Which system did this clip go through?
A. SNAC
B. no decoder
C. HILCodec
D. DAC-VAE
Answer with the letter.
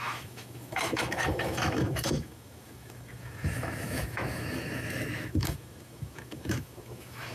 D